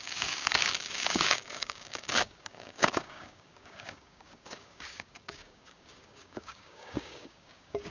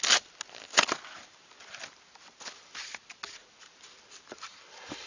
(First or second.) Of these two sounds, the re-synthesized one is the first